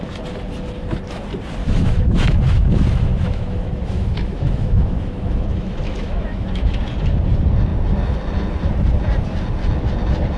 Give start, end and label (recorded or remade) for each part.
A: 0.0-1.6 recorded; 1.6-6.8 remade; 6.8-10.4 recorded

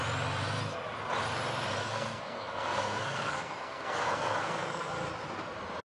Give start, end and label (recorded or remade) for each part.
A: 0.0-1.8 recorded; 1.8-4.9 remade; 4.9-5.9 recorded

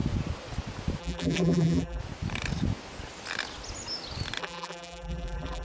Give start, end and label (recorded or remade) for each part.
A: 0.0-1.0 recorded; 1.0-2.0 remade; 2.0-4.4 recorded; 4.4-5.6 remade

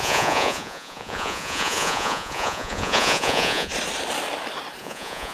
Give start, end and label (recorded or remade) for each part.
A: 0.0-3.7 remade; 3.7-4.8 recorded; 4.8-5.3 remade

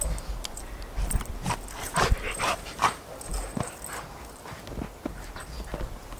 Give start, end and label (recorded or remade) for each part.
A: 0.0-6.2 recorded

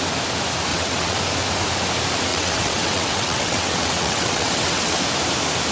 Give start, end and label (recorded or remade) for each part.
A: 0.0-0.7 recorded; 0.7-1.2 remade; 1.2-2.3 recorded; 2.3-5.0 remade; 5.0-5.7 recorded

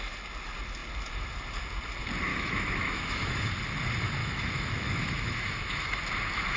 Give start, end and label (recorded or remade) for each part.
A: 0.0-2.3 recorded; 2.3-3.5 remade; 3.5-4.2 recorded; 4.2-6.0 remade; 6.0-6.6 recorded